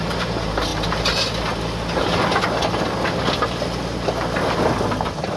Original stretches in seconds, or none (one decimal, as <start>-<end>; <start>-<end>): 0.0-5.4